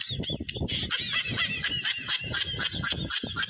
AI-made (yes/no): no